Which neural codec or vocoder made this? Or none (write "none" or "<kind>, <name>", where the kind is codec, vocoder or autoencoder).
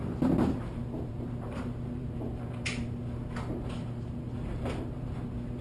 vocoder, BigVGAN v2